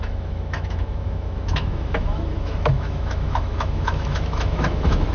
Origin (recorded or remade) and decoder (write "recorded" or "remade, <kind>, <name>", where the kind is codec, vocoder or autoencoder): remade, autoencoder, DAC-VAE